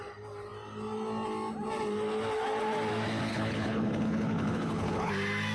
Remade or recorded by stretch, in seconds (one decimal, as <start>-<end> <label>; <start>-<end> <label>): 0.0-3.3 recorded; 3.3-5.1 remade; 5.1-5.5 recorded